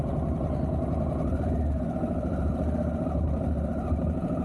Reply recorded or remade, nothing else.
recorded